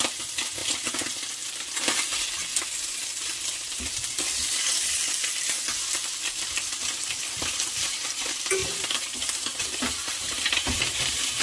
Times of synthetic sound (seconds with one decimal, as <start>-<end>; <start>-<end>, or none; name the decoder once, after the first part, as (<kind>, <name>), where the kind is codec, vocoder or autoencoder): 8.6-11.4 (vocoder, BigVGAN v2)